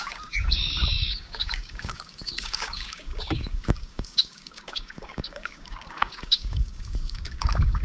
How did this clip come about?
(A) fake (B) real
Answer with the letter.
A